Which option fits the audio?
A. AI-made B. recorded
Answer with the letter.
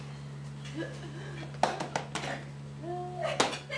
B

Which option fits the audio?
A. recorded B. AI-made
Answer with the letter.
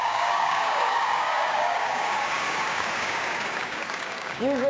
B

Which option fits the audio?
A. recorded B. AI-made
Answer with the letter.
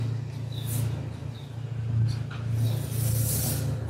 A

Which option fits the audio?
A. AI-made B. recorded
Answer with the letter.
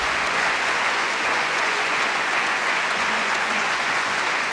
A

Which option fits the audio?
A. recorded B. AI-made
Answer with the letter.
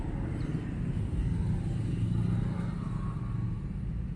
A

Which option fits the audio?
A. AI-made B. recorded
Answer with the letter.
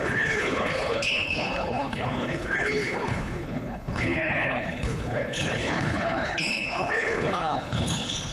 A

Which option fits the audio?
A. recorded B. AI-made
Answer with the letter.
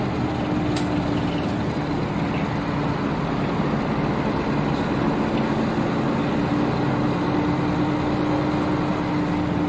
A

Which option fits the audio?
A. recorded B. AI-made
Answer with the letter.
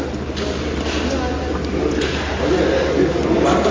A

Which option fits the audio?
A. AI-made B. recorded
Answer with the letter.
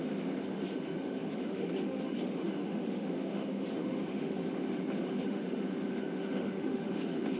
A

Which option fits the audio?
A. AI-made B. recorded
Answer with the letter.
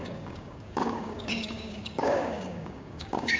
A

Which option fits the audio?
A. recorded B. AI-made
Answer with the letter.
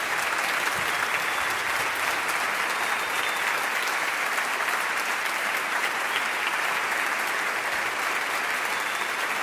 A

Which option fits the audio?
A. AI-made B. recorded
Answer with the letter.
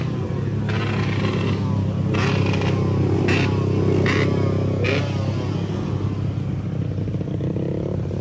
B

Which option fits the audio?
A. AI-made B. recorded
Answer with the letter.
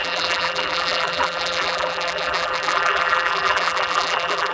A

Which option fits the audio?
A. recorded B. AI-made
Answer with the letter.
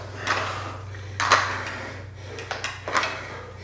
A